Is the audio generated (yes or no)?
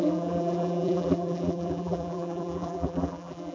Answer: yes